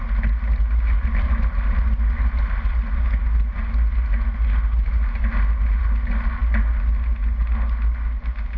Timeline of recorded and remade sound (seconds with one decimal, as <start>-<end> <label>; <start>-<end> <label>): 0.0-8.6 recorded